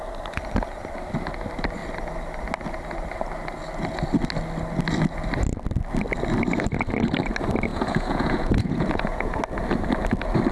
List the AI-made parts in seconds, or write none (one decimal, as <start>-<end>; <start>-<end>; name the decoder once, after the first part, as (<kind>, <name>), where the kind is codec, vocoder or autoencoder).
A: 7.7-9.4 (vocoder, Vocos)